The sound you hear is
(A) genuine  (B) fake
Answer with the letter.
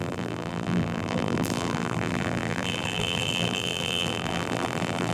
B